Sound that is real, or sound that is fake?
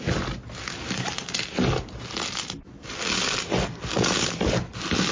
real